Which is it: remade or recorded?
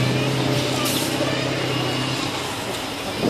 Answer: recorded